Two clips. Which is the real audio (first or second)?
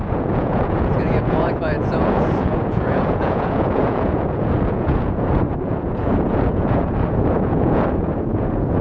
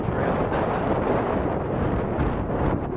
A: second